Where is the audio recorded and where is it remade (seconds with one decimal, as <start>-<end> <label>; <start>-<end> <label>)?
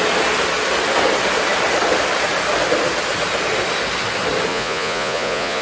0.0-4.5 recorded; 4.5-5.6 remade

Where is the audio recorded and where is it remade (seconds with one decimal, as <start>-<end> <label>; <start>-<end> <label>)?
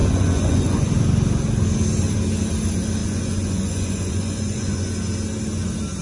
0.0-0.9 remade; 0.9-3.0 recorded; 3.0-4.9 remade; 4.9-6.0 recorded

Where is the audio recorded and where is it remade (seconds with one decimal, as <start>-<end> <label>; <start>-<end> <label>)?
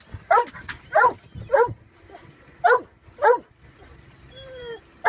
0.0-5.1 recorded